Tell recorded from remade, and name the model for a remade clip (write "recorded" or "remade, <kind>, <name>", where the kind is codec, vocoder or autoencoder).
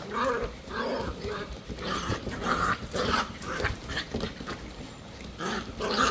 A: remade, vocoder, BigVGAN v2